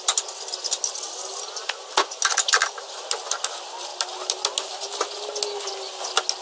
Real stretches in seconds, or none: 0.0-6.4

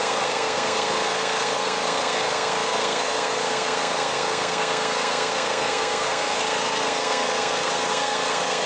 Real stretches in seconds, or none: none

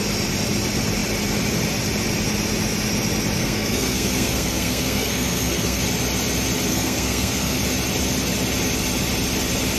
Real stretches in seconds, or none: 0.0-3.4; 5.8-6.7; 7.6-9.8

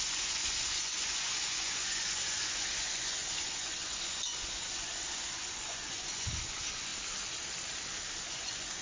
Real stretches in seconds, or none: 6.9-8.2

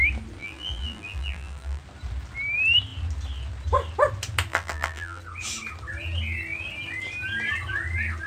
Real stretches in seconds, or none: 0.0-0.4; 1.8-4.5; 5.2-8.3

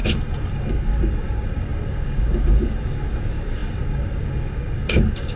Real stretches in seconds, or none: none

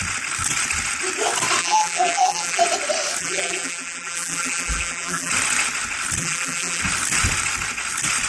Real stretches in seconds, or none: 0.0-1.6; 2.6-3.2; 5.3-6.2; 6.8-8.3